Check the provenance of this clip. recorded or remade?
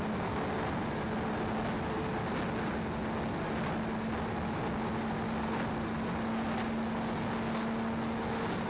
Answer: recorded